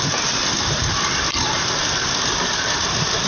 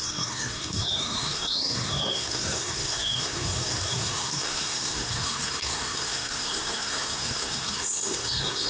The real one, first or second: first